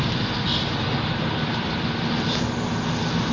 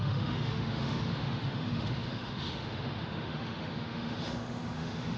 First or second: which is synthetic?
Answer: second